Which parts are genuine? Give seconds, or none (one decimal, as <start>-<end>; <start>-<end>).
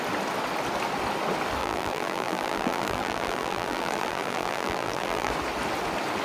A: 0.0-1.6; 5.3-6.2